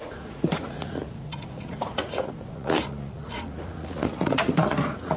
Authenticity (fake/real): fake